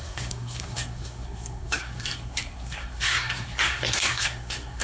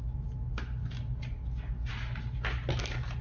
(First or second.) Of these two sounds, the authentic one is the second